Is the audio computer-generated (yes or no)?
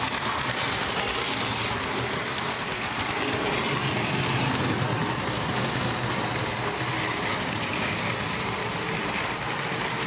no